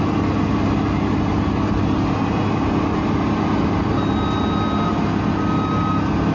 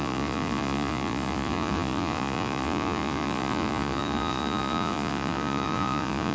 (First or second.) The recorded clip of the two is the first